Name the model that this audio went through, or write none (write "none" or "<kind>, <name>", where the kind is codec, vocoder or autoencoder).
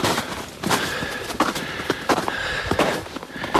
vocoder, BigVGAN v2